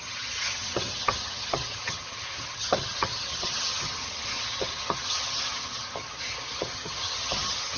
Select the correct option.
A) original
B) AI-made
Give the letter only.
B